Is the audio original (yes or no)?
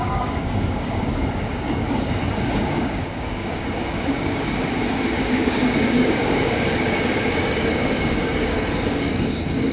no